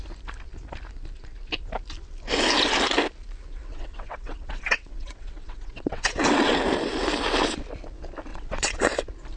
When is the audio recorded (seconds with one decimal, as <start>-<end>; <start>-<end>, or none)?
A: 0.0-3.6; 6.6-8.3; 9.0-9.4